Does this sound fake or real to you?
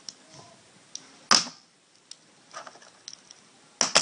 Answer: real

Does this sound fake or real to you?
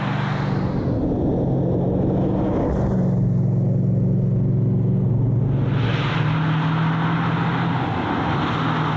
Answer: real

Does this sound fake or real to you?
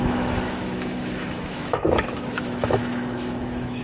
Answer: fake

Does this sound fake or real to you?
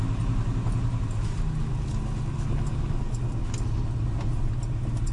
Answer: real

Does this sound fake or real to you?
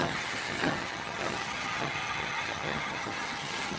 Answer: fake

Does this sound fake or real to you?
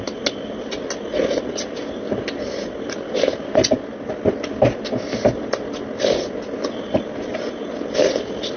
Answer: real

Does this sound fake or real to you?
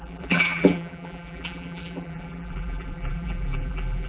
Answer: fake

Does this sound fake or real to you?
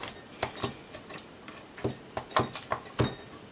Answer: real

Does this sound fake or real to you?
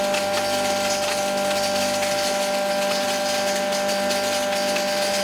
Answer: real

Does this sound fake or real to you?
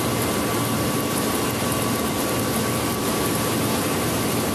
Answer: real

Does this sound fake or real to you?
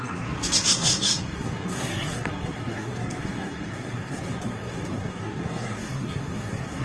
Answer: fake